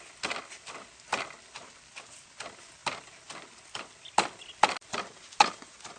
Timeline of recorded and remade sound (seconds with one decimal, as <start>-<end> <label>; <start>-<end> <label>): 0.0-6.0 recorded